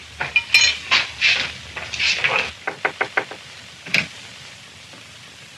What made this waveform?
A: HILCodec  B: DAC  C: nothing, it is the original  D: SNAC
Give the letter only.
C